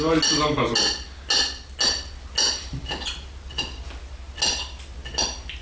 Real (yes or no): yes